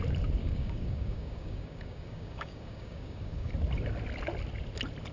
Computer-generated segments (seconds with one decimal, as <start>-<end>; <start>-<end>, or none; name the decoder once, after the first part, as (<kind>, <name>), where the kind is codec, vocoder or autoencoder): 0.4-3.5 (codec, DAC)

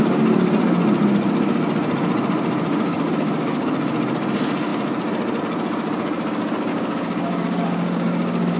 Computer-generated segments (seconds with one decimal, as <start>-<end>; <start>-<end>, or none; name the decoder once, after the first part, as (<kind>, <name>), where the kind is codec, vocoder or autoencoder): 2.7-3.7 (codec, DAC); 6.7-8.6

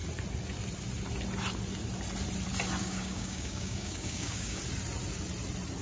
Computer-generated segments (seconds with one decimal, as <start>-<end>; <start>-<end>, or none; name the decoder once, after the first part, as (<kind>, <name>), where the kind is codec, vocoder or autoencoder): 2.8-4.6 (codec, DAC)

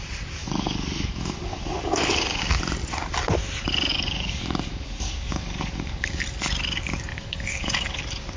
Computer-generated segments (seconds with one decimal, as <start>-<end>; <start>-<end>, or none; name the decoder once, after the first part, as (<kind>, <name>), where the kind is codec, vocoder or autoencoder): 0.4-2.4 (codec, DAC); 3.9-6.2; 7.1-8.0